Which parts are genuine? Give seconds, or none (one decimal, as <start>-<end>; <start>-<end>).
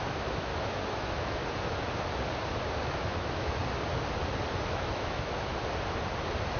0.5-1.0; 1.4-2.8; 3.6-4.7; 5.5-6.6